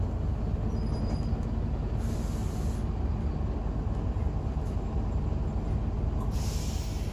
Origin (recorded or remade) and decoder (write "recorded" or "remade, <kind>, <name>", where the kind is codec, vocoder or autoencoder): recorded